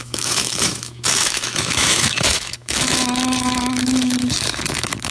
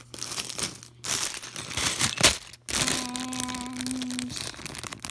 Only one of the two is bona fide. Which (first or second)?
second